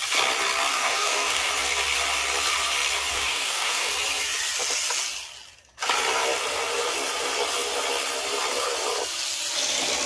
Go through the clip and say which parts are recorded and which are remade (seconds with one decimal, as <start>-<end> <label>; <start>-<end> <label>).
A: 0.0-0.7 recorded; 0.7-1.5 remade; 1.5-3.1 recorded; 3.1-3.9 remade; 3.9-10.1 recorded